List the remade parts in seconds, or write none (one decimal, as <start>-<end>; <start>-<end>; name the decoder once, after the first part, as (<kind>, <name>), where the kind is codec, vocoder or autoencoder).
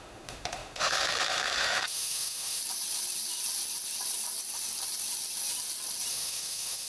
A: 0.0-2.6 (autoencoder, DAC-VAE); 6.1-6.9